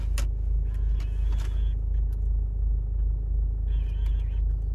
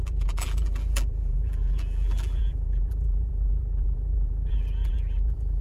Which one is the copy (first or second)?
second